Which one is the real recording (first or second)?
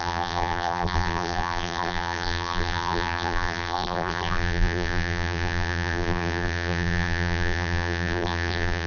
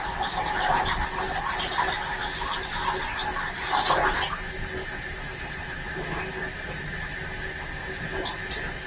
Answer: second